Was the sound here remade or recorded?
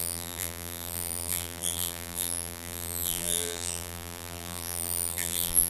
remade